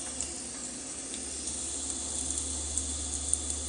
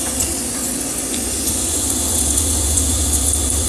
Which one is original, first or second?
first